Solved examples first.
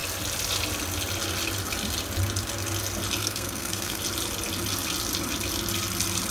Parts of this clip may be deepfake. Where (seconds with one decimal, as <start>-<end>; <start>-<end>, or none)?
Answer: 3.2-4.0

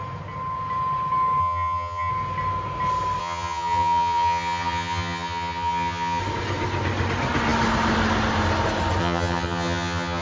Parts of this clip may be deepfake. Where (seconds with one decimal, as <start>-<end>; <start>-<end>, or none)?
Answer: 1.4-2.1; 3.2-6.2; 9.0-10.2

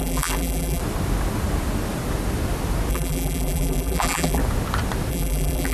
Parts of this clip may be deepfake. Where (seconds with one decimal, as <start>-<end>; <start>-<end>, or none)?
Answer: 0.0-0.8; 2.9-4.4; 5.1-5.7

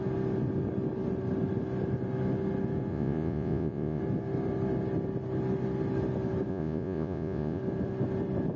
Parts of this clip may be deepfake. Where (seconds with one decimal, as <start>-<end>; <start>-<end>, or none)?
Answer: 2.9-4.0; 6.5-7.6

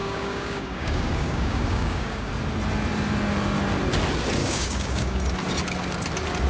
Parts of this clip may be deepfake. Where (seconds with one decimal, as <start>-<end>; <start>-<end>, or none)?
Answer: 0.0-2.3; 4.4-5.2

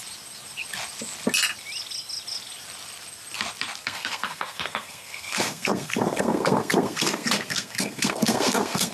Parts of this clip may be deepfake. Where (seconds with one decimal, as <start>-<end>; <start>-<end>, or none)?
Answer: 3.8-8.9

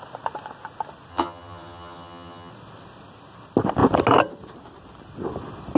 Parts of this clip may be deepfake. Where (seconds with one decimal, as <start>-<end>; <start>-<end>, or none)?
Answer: 1.1-2.5

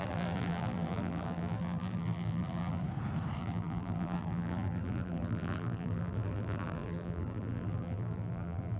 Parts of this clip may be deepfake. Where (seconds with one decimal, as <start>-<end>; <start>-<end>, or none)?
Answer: 0.0-2.8; 3.4-8.8